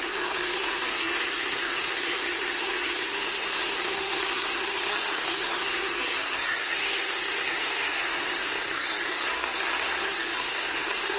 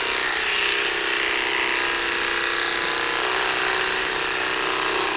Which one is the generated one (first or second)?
first